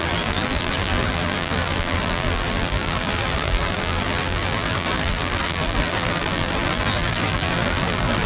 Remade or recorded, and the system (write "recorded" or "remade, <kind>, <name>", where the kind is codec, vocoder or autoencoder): remade, vocoder, BigVGAN v2